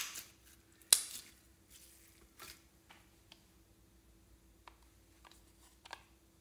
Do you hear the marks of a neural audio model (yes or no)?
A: no